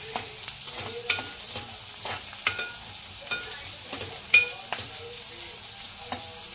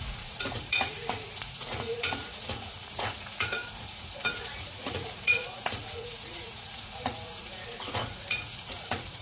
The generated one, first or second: second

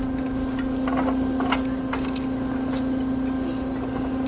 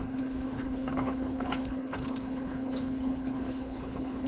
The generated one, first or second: second